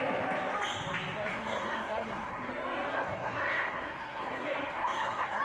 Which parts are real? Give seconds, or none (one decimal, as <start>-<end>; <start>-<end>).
0.0-1.3; 2.5-2.9